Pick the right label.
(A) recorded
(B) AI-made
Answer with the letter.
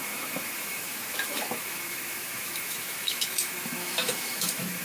B